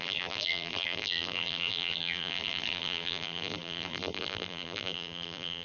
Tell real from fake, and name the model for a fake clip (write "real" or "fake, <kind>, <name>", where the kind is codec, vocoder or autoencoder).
fake, vocoder, BigVGAN v2